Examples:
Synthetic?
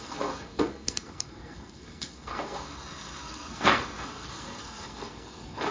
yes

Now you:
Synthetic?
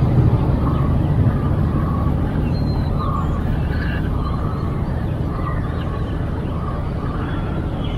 yes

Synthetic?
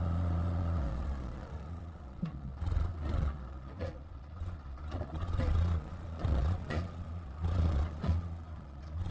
yes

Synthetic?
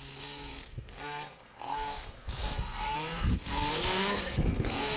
yes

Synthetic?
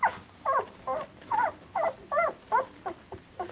no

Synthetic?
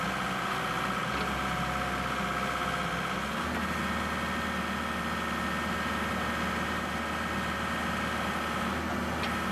no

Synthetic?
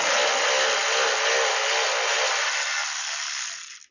no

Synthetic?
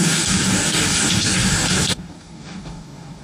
yes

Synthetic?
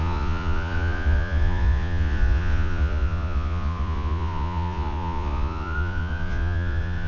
yes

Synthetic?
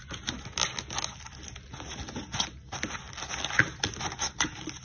no